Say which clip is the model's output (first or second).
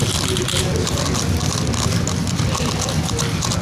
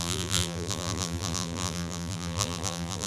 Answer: second